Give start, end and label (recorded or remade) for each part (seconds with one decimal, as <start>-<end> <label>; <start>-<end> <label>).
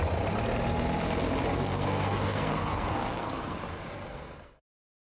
0.0-1.5 recorded; 1.5-3.6 remade; 3.6-4.1 recorded; 4.1-4.6 remade; 4.6-5.1 recorded